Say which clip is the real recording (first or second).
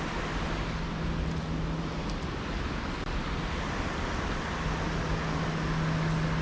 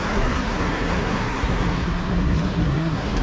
first